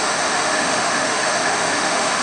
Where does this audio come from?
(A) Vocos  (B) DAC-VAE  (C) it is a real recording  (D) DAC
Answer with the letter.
B